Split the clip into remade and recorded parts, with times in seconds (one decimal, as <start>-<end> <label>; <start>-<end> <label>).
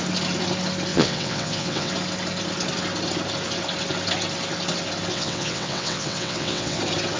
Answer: 0.0-0.9 recorded; 0.9-1.9 remade; 1.9-5.1 recorded; 5.1-6.8 remade; 6.8-7.2 recorded